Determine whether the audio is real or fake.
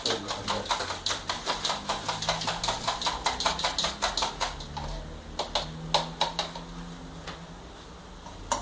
real